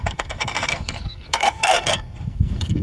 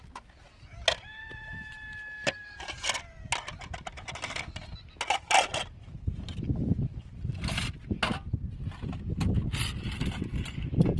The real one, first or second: second